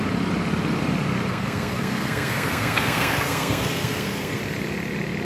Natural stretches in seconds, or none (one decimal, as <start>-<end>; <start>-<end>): 0.0-1.3; 4.4-5.2